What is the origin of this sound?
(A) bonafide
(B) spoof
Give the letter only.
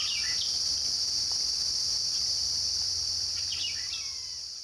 B